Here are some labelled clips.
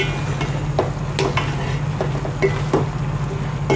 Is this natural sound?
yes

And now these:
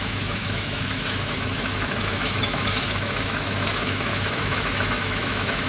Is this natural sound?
no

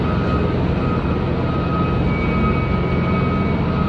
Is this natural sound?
yes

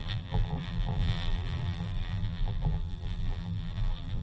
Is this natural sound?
no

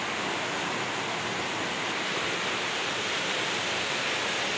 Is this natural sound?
yes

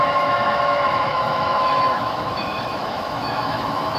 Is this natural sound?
no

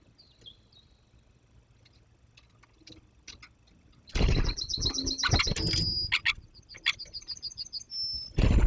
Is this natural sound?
yes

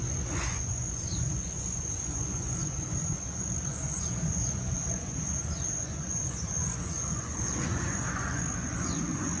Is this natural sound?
no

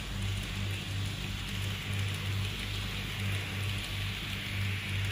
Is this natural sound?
yes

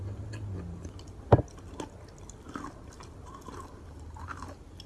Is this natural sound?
yes